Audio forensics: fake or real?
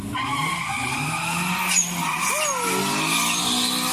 real